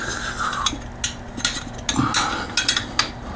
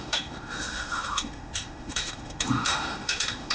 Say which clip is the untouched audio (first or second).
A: first